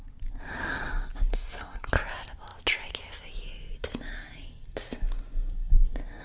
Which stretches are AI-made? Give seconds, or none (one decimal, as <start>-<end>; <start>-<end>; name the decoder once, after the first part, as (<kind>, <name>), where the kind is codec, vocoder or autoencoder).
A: 1.3-1.9 (codec, SNAC)

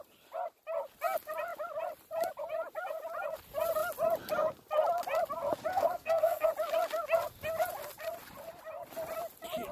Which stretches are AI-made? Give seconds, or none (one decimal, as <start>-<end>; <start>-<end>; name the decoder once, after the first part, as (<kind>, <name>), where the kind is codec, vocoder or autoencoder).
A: 5.7-6.5 (codec, SNAC)

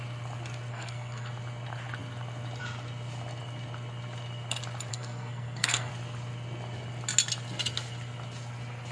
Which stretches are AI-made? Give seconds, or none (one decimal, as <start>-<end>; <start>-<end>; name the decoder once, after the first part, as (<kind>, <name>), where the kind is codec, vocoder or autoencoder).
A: 0.7-1.3 (codec, SNAC); 4.9-5.9

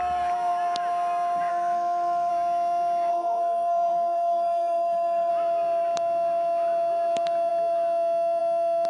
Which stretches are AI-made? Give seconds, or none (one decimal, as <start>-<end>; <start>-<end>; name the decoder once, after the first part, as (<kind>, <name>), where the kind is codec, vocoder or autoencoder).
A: 1.5-2.3 (codec, SNAC); 3.1-5.3

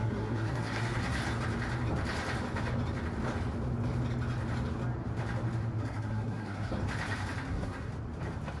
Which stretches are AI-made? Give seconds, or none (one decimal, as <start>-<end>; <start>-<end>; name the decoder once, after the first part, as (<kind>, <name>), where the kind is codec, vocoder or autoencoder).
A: 0.0-1.2 (codec, SNAC); 5.8-6.7; 7.5-7.9

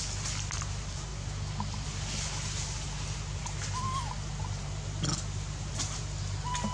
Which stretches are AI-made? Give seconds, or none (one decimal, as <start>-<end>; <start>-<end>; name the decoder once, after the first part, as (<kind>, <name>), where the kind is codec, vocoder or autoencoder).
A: none

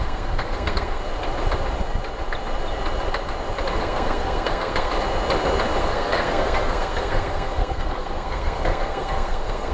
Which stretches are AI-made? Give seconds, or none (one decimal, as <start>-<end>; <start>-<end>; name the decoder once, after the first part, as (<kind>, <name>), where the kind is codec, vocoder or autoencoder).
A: 0.0-1.0 (codec, SNAC); 3.8-4.9; 5.8-9.7